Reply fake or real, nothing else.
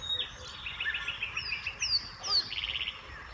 real